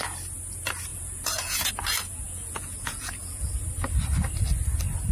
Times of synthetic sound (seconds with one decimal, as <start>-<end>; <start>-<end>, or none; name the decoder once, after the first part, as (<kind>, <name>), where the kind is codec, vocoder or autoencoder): 0.9-1.7 (vocoder, Vocos); 2.1-3.5